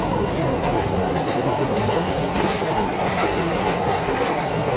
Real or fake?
fake